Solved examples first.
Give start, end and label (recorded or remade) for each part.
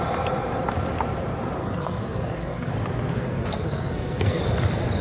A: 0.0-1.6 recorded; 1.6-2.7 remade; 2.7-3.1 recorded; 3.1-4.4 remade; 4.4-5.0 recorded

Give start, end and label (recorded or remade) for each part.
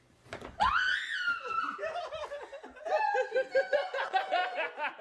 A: 0.0-0.9 remade; 0.9-3.6 recorded; 3.6-4.4 remade; 4.4-5.0 recorded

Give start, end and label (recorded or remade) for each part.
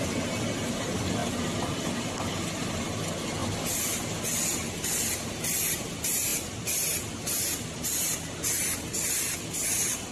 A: 0.0-10.1 recorded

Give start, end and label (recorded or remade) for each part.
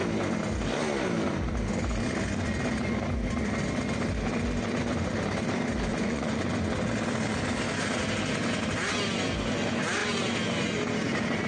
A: 0.0-5.9 recorded; 5.9-6.5 remade; 6.5-11.5 recorded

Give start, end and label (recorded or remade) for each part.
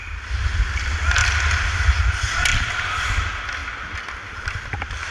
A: 0.0-5.1 recorded